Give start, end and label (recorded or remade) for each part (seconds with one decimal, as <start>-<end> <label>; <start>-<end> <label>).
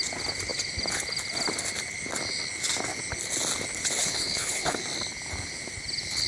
0.0-4.0 recorded; 4.0-4.8 remade; 4.8-6.3 recorded